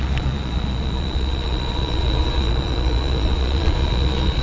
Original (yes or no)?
no